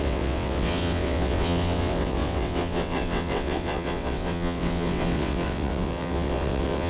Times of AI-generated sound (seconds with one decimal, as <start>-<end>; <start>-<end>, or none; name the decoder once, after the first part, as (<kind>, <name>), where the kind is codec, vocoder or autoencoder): 0.0-6.9 (vocoder, WaveNeXt)